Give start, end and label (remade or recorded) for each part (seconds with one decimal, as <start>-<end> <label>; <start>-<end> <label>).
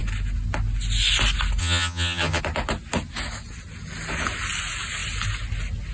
0.0-1.6 recorded; 1.6-2.4 remade; 2.4-5.9 recorded